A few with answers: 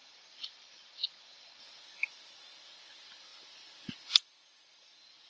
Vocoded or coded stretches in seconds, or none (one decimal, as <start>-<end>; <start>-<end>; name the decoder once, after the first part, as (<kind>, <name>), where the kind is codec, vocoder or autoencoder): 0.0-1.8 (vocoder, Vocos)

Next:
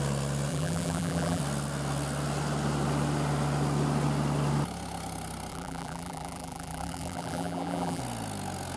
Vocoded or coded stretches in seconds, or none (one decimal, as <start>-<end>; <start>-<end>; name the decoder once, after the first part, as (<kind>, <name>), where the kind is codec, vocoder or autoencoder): 0.5-1.4 (vocoder, BigVGAN v2); 5.5-8.0

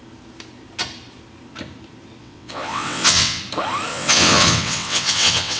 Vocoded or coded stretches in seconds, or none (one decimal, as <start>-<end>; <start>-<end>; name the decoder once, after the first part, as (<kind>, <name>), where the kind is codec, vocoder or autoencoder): 2.2-3.4 (vocoder, WaveNeXt); 3.9-5.6

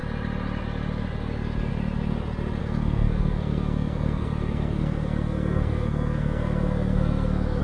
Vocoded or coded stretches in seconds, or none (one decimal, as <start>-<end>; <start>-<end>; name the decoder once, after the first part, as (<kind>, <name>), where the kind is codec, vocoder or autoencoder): 2.6-7.6 (codec, SNAC)